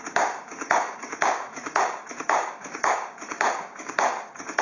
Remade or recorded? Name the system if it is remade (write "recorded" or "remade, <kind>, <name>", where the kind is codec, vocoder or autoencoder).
remade, codec, DAC